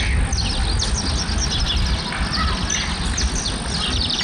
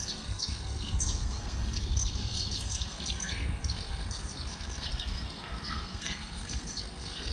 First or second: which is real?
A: first